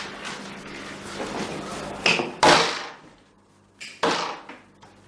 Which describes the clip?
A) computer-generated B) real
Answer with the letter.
B